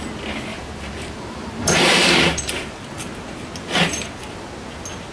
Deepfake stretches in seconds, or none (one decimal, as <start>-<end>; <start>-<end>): 0.5-3.1